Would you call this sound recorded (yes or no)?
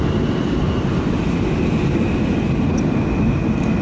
yes